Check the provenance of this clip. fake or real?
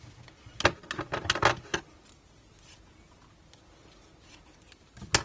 real